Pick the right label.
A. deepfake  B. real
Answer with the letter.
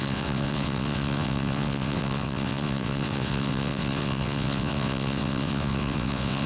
A